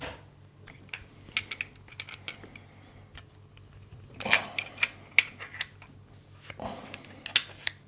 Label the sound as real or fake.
real